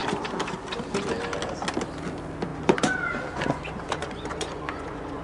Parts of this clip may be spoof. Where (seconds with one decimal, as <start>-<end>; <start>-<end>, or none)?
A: 2.5-5.2